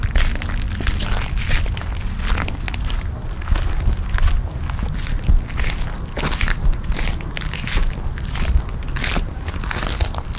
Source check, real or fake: real